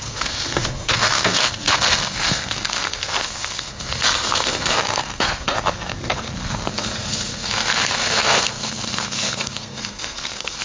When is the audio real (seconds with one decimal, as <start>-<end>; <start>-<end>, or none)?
none